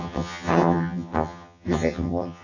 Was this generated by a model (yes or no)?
yes